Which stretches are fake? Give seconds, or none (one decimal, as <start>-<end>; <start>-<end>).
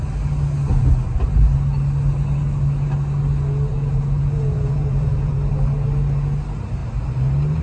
3.7-5.5